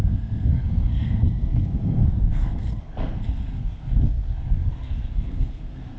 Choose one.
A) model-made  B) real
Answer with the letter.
A